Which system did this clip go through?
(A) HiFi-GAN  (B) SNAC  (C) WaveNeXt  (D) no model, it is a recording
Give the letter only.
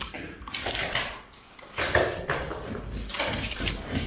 D